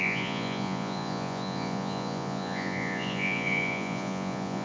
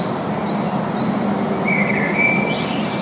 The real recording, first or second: second